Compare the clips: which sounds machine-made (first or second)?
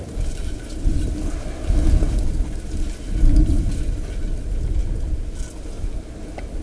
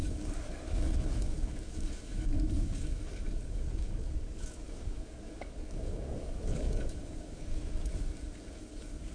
second